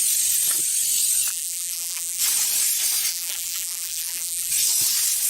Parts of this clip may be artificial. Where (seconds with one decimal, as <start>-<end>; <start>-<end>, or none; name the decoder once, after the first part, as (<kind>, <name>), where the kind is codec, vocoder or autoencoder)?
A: 1.3-2.2 (vocoder, BigVGAN v2); 3.1-4.5

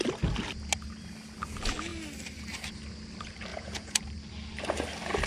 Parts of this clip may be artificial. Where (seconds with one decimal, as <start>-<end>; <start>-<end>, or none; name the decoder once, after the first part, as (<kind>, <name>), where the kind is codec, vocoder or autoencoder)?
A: 3.5-4.0 (vocoder, Vocos)